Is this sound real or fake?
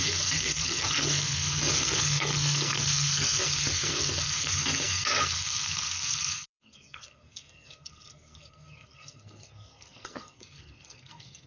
fake